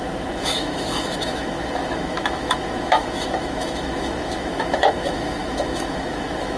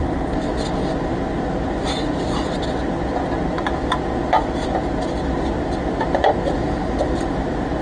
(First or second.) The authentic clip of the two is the second